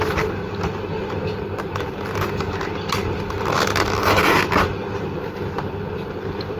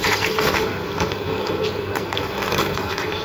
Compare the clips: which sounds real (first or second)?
first